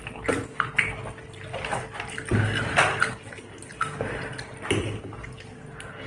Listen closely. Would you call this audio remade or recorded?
recorded